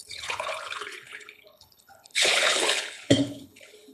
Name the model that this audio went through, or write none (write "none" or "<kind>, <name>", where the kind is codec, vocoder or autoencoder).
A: codec, HILCodec